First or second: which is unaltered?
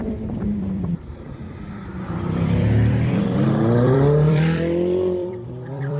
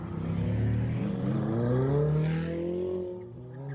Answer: second